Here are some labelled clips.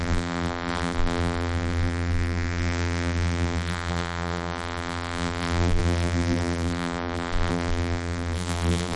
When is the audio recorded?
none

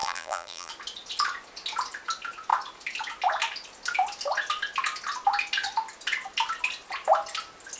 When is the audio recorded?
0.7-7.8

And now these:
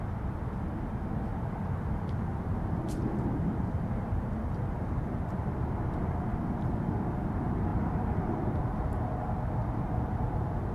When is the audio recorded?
0.0-1.3; 6.5-7.7; 8.6-10.7

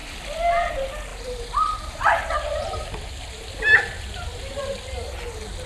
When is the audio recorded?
0.7-1.1; 4.5-5.7